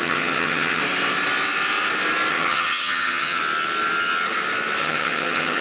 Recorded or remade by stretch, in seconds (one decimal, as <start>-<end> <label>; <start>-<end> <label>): 0.0-0.8 remade; 0.8-2.3 recorded; 2.3-3.4 remade; 3.4-4.8 recorded; 4.8-5.6 remade